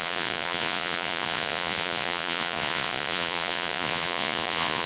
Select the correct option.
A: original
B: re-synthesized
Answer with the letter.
B